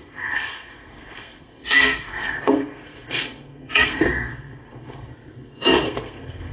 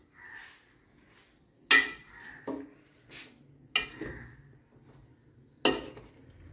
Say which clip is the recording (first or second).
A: second